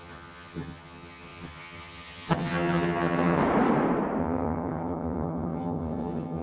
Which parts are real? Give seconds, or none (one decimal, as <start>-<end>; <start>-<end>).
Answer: 3.4-4.2